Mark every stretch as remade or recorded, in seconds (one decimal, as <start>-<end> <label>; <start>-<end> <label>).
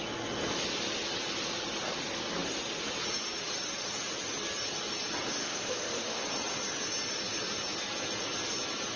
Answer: 0.0-5.4 recorded; 5.4-6.2 remade; 6.2-9.0 recorded